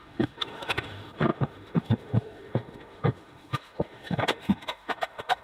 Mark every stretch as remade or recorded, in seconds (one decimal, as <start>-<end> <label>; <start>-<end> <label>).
0.0-5.4 remade